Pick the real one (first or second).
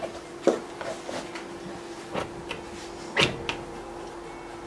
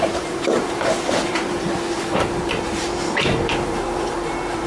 first